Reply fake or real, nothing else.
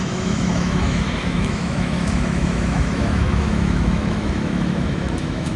fake